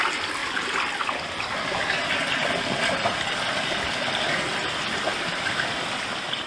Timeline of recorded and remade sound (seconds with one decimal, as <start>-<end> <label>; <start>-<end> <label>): 0.0-6.5 recorded